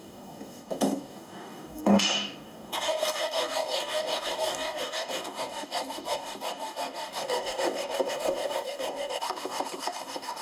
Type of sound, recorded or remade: remade